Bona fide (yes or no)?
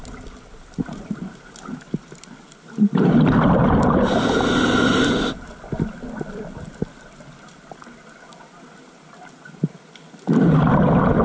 yes